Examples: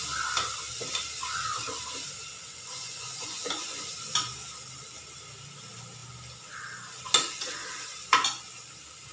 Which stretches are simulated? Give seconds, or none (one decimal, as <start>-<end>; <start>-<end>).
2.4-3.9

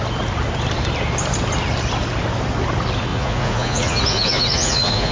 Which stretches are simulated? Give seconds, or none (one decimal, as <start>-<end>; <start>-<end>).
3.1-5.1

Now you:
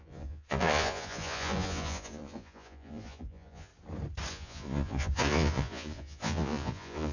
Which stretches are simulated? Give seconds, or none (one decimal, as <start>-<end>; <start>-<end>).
0.0-3.7; 4.3-7.1